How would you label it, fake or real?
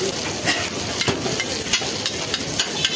real